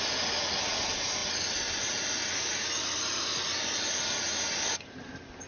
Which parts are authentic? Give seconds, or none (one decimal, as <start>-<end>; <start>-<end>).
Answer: 0.0-5.5